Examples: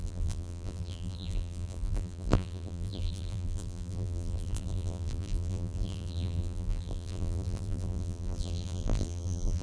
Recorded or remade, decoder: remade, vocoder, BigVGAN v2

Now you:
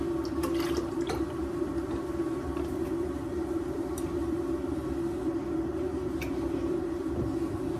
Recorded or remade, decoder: remade, vocoder, BigVGAN v2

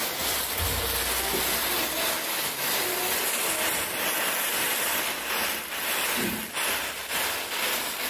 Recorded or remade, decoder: recorded